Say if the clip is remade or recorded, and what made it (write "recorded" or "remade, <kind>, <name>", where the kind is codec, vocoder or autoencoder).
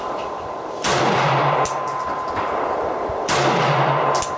remade, vocoder, BigVGAN v2